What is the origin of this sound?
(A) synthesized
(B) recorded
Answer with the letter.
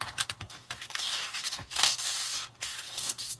A